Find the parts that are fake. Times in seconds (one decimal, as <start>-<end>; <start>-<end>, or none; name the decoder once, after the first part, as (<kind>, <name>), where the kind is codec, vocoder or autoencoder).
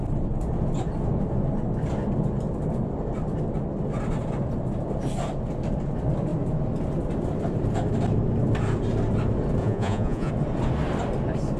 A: 9.6-10.3 (vocoder, Vocos)